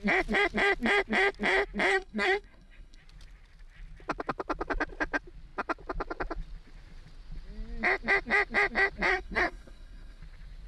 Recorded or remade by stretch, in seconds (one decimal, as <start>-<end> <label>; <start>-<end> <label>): 0.0-1.9 recorded; 1.9-3.0 remade; 3.0-9.1 recorded; 9.1-10.2 remade; 10.2-10.7 recorded